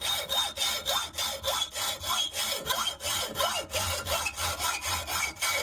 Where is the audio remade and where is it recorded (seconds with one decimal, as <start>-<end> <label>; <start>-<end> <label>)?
0.0-5.6 recorded